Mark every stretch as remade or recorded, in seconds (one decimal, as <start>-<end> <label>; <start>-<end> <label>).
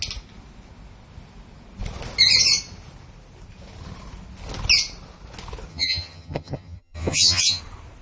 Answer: 0.0-5.7 recorded; 5.7-7.6 remade; 7.6-8.0 recorded